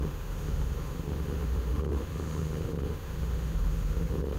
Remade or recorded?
remade